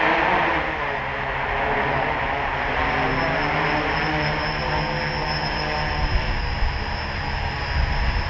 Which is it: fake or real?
real